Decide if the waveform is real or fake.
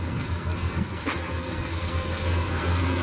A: fake